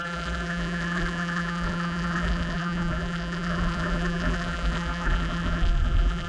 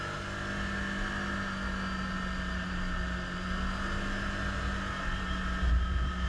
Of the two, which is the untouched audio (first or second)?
second